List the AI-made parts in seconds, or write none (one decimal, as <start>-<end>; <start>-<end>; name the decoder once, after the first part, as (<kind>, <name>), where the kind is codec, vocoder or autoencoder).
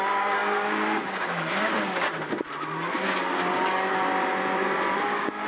0.0-2.1 (codec, DAC); 3.5-4.1; 5.0-5.5